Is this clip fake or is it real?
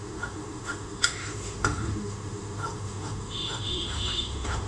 fake